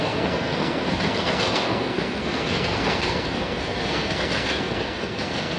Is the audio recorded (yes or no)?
no